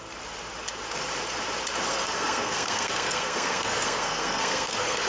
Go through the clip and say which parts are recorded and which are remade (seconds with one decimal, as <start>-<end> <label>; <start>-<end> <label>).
0.0-1.9 recorded; 1.9-5.1 remade